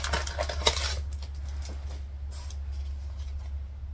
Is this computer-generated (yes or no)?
no